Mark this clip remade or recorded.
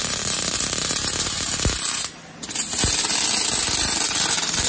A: recorded